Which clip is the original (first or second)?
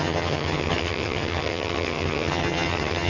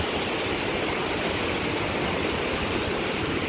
second